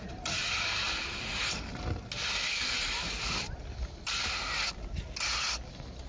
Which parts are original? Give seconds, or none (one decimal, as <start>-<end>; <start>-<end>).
0.0-6.1